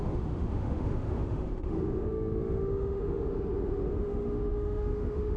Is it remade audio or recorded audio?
remade